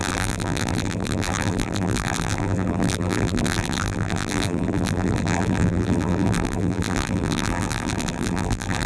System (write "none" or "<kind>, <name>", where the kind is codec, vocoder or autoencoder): vocoder, BigVGAN v2